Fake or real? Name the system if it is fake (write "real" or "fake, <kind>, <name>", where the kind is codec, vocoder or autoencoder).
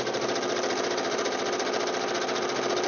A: real